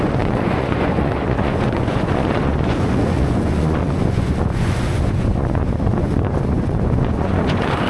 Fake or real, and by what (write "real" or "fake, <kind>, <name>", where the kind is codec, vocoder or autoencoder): fake, vocoder, Vocos